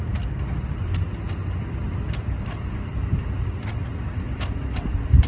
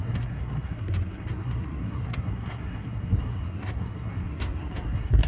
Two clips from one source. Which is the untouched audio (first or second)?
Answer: first